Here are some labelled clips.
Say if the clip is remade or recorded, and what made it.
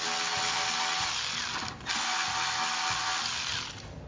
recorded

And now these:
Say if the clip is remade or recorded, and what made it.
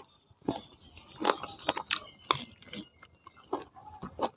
recorded